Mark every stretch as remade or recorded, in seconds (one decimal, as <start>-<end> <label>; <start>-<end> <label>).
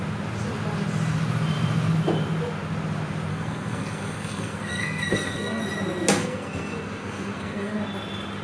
0.0-3.3 recorded; 3.3-5.6 remade; 5.6-6.2 recorded; 6.2-7.8 remade; 7.8-8.4 recorded